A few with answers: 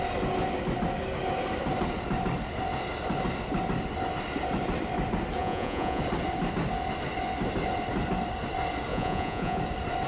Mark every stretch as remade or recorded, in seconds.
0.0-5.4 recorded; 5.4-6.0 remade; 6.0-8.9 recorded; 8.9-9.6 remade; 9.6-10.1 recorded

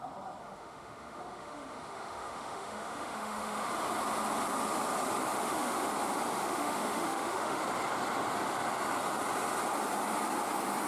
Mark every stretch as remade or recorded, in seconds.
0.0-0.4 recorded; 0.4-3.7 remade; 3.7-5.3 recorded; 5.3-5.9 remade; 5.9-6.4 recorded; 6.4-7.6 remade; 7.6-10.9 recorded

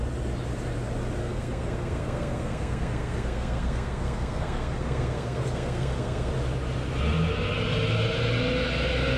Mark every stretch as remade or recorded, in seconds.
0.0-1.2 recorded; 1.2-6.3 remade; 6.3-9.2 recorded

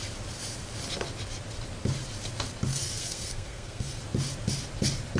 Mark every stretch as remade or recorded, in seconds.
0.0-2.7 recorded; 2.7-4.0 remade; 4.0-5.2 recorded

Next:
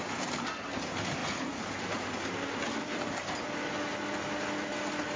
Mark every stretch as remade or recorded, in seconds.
0.0-5.2 recorded